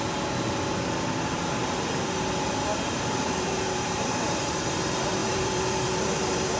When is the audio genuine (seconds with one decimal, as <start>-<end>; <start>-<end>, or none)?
0.0-2.7; 4.8-5.2